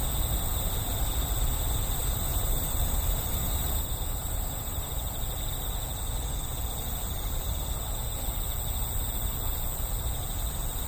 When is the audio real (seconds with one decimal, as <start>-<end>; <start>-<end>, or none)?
0.0-2.0; 4.9-10.9